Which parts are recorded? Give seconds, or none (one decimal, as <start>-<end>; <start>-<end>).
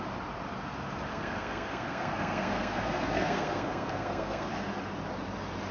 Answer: 0.0-1.1; 4.5-5.7